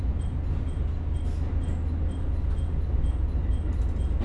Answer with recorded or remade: recorded